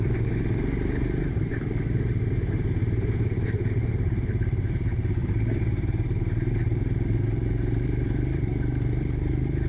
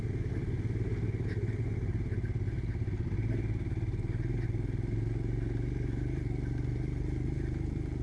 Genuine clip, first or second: second